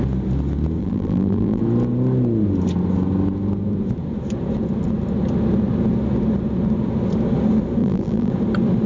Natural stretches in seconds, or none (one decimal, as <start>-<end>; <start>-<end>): 0.0-0.8; 1.6-7.8; 8.3-8.9